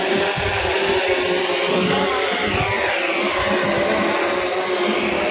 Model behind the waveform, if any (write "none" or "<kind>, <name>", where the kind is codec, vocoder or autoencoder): none